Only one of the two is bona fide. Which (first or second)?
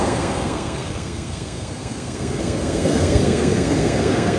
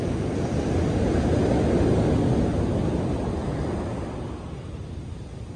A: second